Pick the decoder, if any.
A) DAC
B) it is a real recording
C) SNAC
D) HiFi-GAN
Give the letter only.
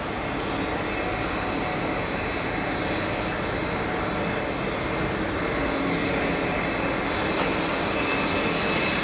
B